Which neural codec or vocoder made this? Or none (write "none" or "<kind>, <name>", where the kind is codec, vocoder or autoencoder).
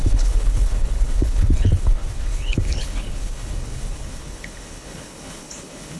codec, HILCodec